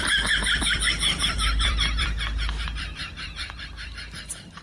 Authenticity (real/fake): fake